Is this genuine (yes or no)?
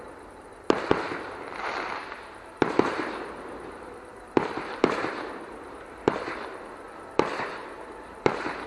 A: no